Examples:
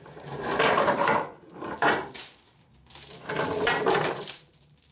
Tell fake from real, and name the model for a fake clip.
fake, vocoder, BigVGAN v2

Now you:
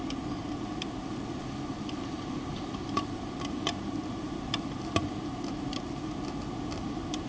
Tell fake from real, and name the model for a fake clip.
real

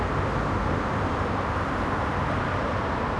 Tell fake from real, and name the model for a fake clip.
real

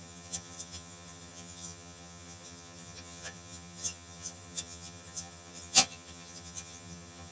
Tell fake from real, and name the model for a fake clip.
fake, vocoder, HiFi-GAN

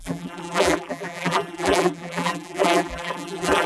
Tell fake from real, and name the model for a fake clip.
fake, vocoder, BigVGAN v2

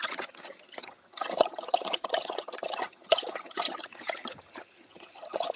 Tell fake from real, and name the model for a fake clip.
fake, vocoder, HiFi-GAN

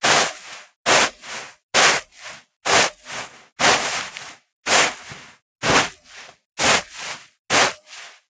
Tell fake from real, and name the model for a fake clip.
real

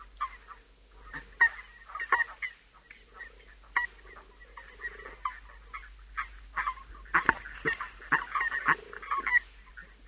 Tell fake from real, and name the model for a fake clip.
real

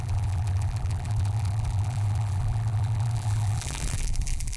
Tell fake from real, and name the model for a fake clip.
fake, vocoder, BigVGAN v2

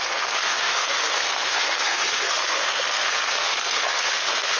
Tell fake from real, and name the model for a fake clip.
fake, codec, SNAC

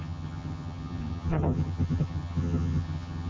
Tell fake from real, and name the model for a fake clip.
fake, vocoder, HiFi-GAN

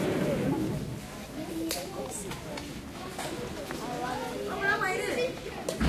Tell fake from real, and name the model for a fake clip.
real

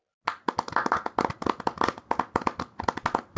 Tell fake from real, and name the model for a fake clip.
real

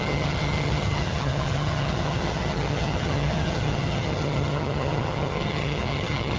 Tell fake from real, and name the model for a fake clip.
fake, vocoder, HiFi-GAN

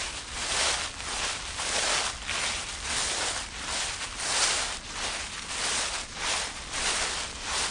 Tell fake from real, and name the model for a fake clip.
real